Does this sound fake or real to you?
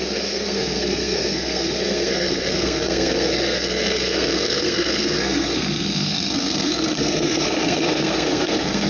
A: fake